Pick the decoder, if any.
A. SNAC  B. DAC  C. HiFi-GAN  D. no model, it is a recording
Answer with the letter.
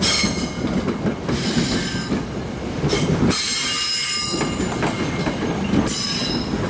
D